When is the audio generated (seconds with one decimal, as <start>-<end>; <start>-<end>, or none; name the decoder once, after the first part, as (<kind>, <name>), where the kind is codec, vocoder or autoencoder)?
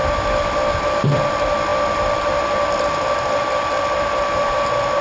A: none